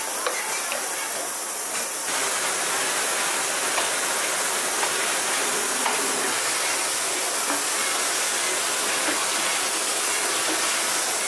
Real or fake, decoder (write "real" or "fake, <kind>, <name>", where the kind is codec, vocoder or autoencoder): real